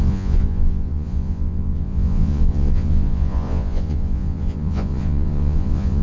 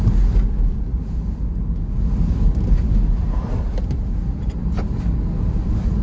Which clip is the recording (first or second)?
second